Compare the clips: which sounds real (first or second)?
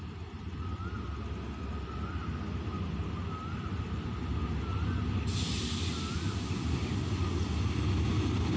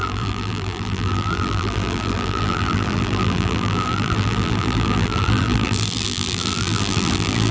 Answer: first